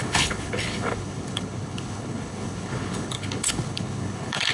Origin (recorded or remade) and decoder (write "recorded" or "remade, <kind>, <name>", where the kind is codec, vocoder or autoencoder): remade, codec, HILCodec